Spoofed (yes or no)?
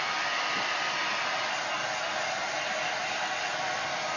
no